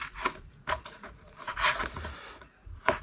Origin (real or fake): fake